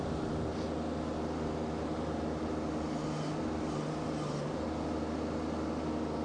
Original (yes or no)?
yes